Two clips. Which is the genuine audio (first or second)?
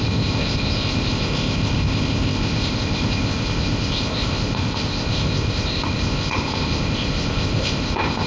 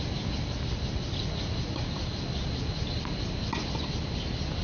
second